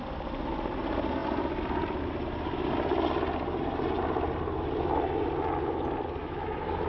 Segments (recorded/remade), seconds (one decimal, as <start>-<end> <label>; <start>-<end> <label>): 0.0-6.2 recorded; 6.2-6.9 remade